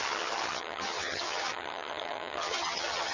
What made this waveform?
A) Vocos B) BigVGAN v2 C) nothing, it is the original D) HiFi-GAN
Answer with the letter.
D